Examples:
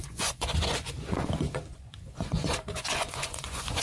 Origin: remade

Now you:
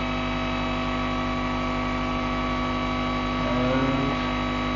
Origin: recorded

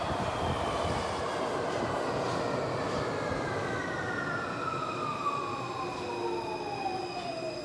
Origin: recorded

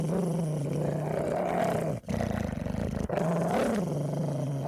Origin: recorded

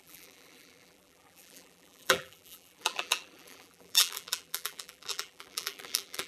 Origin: remade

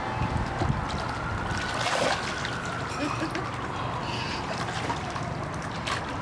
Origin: recorded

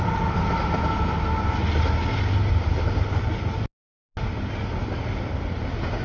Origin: recorded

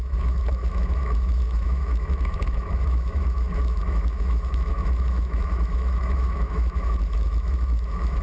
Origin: remade